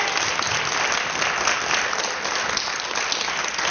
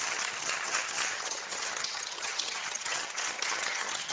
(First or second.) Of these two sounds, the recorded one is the first